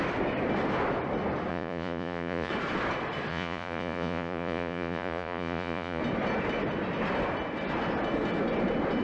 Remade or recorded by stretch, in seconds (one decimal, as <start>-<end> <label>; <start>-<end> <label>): 0.0-1.5 recorded; 1.5-2.5 remade; 2.5-3.3 recorded; 3.3-6.0 remade; 6.0-9.0 recorded